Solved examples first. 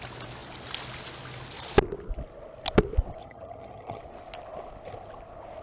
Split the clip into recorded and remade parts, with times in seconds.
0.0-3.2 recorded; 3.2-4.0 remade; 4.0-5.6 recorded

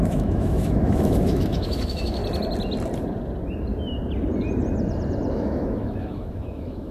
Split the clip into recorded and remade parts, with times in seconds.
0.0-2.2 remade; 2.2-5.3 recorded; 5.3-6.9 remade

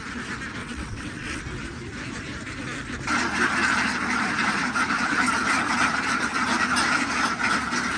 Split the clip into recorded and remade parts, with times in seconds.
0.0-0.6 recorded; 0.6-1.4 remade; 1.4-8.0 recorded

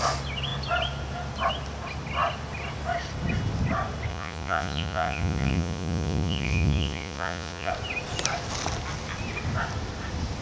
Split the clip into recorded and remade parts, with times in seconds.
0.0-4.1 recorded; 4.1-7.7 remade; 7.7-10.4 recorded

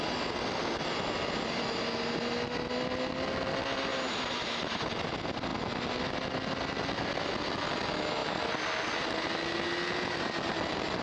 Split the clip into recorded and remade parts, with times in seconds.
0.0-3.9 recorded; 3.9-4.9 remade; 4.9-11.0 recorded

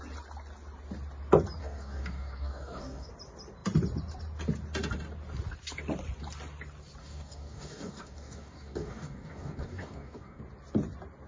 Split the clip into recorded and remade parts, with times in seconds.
0.0-1.6 recorded; 1.6-3.1 remade; 3.1-7.0 recorded; 7.0-10.4 remade; 10.4-11.3 recorded